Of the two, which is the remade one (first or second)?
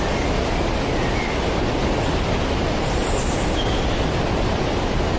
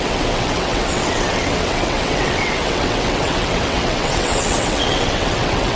second